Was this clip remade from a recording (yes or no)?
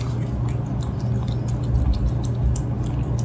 no